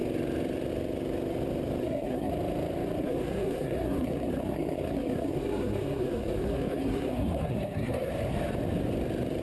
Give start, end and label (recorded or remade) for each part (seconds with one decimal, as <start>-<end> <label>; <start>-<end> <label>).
0.0-1.8 recorded; 1.8-2.3 remade; 2.3-3.0 recorded; 3.0-8.1 remade; 8.1-9.4 recorded